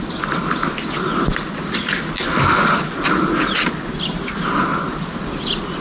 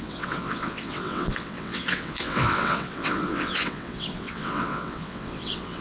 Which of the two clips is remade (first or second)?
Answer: second